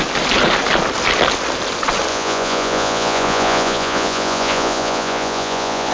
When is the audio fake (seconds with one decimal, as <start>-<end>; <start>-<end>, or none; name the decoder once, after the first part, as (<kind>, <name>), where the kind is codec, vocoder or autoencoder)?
2.1-5.9 (vocoder, Vocos)